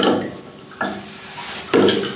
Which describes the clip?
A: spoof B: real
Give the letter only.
B